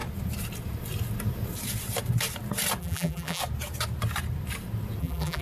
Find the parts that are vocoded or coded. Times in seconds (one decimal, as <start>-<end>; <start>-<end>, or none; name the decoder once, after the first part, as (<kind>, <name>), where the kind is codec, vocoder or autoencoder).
2.8-3.4 (vocoder, BigVGAN v2); 5.0-5.4